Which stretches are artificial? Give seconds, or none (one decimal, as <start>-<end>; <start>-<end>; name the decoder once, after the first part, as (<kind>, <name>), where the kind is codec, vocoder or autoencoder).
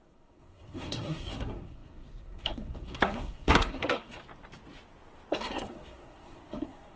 0.0-4.2 (codec, SNAC); 5.3-7.0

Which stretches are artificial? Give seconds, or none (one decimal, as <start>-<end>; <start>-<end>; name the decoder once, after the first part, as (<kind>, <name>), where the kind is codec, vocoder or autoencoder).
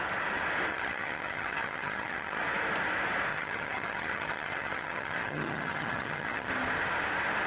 0.7-2.4 (vocoder, HiFi-GAN); 3.3-6.5